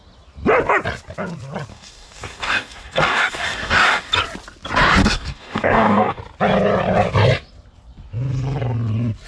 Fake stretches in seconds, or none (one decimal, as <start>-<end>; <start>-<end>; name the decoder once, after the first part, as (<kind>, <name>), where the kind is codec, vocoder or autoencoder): 1.7-4.1 (codec, DAC); 5.0-6.2